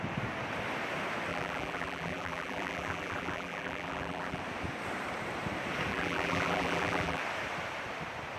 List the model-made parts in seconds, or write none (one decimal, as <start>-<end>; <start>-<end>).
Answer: 1.3-4.4; 5.9-7.2